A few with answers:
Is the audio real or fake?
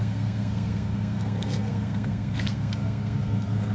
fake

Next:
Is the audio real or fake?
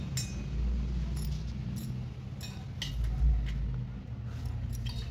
real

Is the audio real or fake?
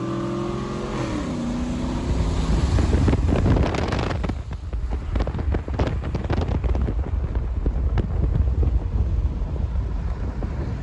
real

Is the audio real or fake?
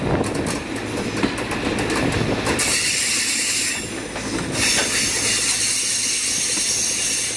real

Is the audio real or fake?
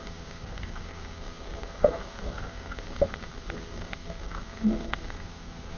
fake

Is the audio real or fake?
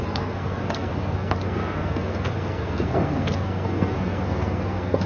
fake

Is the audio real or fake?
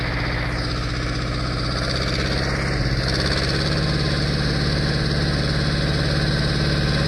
real